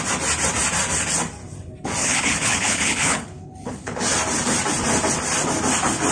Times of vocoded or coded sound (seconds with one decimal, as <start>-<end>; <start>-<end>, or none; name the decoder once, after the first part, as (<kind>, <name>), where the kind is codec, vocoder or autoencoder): 2.0-4.0 (codec, HILCodec)